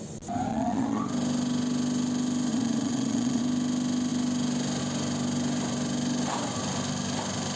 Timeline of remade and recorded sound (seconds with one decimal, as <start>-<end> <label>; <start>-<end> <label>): 0.0-0.5 recorded; 0.5-1.0 remade; 1.0-2.5 recorded; 2.5-3.4 remade; 3.4-7.6 recorded

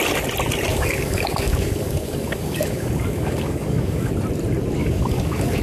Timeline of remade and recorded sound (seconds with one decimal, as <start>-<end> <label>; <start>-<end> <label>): 0.0-0.7 recorded; 0.7-4.1 remade; 4.1-4.8 recorded; 4.8-5.6 remade

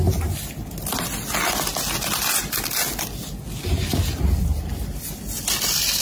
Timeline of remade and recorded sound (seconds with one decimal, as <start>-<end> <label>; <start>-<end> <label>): 0.0-6.0 recorded

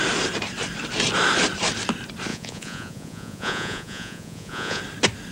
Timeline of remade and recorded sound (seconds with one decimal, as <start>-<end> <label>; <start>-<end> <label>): 0.0-2.3 recorded; 2.3-4.8 remade; 4.8-5.3 recorded

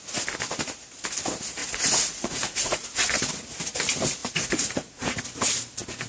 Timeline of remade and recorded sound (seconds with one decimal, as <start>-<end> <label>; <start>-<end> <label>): 0.0-1.6 recorded; 1.6-3.3 remade; 3.3-4.2 recorded; 4.2-5.2 remade; 5.2-6.1 recorded

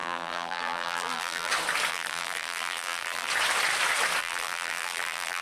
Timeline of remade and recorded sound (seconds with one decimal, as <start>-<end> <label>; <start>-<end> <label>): 0.0-1.5 remade; 1.5-1.9 recorded; 1.9-3.3 remade; 3.3-4.2 recorded; 4.2-5.4 remade

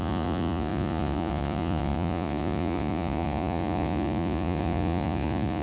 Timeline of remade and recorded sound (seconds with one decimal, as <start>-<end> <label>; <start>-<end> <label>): 0.0-5.6 remade